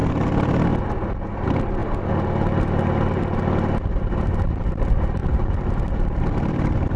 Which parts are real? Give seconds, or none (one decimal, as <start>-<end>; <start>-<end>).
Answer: 0.0-5.2